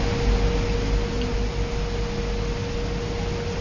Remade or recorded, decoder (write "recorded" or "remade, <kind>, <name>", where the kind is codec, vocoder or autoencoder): recorded